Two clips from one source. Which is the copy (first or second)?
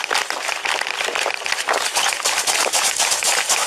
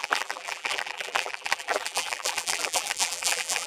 second